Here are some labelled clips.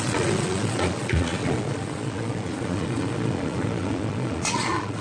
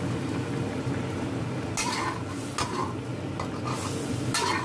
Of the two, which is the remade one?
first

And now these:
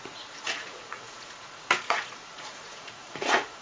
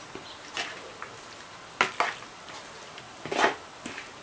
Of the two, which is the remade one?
first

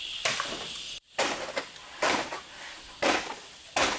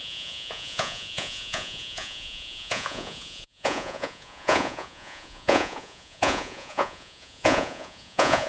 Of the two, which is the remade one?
second